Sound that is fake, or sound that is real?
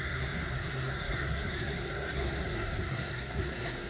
fake